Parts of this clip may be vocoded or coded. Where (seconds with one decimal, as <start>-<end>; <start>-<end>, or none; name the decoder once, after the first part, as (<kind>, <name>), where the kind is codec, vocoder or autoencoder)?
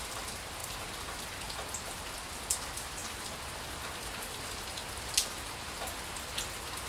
none